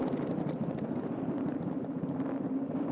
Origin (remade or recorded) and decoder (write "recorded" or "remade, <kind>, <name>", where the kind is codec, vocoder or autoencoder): recorded